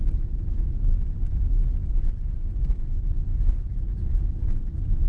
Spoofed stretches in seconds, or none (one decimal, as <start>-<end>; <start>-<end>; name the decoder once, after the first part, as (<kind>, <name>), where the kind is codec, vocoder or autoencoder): none